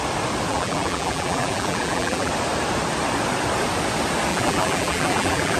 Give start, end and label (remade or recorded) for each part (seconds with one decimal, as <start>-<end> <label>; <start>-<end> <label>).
0.0-0.5 recorded; 0.5-2.3 remade; 2.3-4.3 recorded; 4.3-5.6 remade